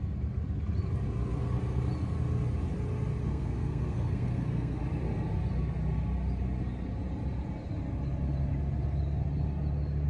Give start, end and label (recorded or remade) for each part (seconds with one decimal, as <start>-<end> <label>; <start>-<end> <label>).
0.0-3.3 recorded; 3.3-4.8 remade; 4.8-10.1 recorded